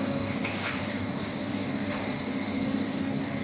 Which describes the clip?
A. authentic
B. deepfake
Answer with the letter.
B